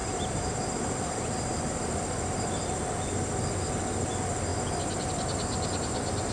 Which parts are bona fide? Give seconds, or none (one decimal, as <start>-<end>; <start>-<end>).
0.5-6.3